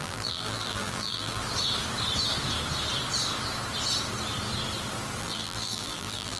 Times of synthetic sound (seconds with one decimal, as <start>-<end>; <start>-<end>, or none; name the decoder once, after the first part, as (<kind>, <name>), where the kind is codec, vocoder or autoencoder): 0.0-1.4 (vocoder, BigVGAN v2); 5.2-6.4